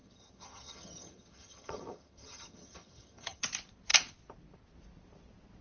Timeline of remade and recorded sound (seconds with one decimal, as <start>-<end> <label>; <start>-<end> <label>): 0.0-3.4 remade; 3.4-5.6 recorded